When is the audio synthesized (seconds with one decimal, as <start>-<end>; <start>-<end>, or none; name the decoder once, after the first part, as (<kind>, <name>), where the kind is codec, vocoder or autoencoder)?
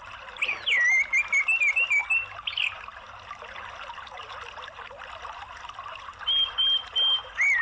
none